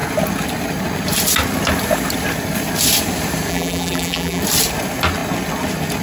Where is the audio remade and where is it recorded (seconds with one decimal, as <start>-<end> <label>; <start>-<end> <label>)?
0.0-3.5 recorded; 3.5-4.4 remade; 4.4-6.0 recorded